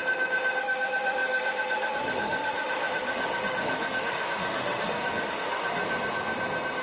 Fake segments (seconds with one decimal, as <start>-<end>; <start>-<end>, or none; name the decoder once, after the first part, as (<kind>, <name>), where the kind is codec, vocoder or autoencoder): 0.6-5.8 (autoencoder, DAC-VAE)